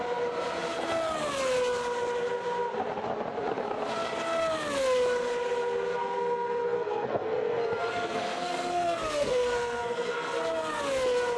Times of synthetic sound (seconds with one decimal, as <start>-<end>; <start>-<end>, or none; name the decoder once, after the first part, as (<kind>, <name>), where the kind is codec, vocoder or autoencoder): 6.0-10.4 (codec, SNAC)